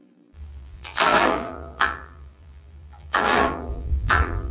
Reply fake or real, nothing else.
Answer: fake